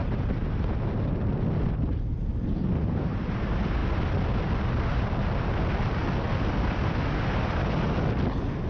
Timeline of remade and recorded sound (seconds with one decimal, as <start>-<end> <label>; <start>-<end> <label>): 0.0-8.7 recorded